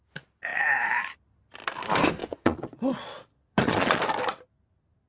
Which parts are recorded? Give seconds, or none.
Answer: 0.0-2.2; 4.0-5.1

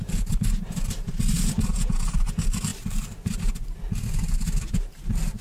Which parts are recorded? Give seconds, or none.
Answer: none

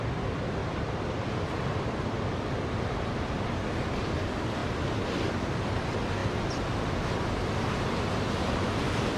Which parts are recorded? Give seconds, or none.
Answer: 0.0-0.6; 3.3-9.2

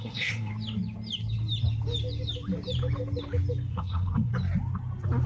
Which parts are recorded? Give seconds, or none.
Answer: 0.5-3.7; 4.3-5.3

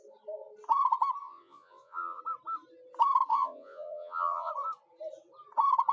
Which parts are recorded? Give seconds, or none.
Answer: 0.0-1.2; 2.2-3.3; 4.5-5.9

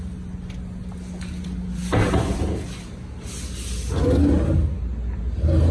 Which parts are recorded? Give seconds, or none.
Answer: 0.0-5.7